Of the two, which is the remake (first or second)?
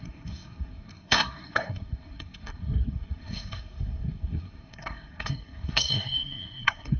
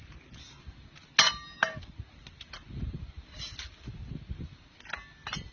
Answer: first